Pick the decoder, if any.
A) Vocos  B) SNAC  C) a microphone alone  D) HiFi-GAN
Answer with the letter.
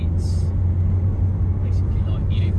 C